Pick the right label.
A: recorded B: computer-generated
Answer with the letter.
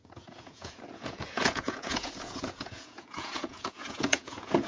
B